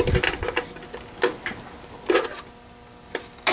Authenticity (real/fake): real